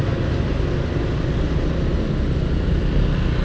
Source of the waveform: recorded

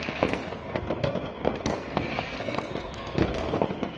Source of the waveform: remade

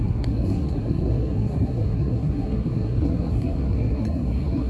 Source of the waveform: remade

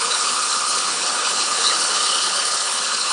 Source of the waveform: remade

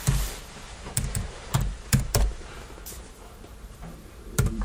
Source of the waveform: remade